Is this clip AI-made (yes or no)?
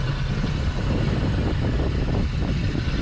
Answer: no